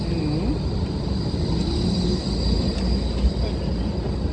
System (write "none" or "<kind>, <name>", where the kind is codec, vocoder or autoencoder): none